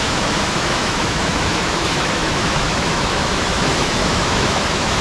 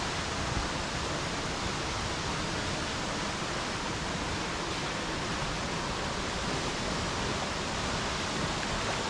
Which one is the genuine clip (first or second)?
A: second